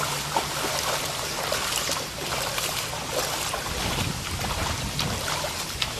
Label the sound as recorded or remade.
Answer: recorded